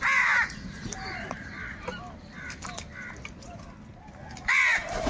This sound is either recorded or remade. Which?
recorded